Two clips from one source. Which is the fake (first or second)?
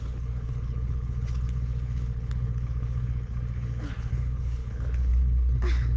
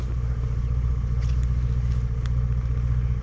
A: first